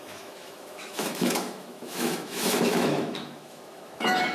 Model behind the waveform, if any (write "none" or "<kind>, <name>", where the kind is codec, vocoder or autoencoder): autoencoder, DAC-VAE